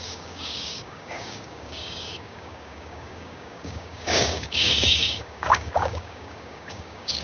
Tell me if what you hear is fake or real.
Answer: fake